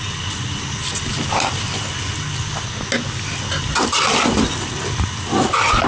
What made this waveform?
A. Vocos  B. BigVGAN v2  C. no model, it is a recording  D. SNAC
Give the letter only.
C